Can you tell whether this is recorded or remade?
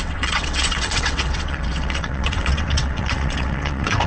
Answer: remade